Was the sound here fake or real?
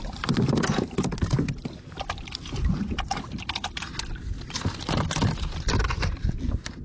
real